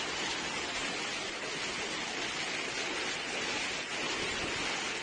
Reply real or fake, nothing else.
real